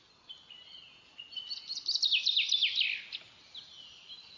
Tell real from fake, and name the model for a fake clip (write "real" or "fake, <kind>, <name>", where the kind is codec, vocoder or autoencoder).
real